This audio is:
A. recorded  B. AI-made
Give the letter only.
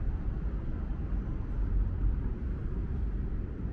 B